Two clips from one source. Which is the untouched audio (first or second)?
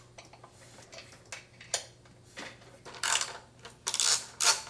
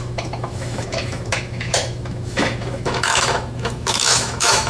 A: first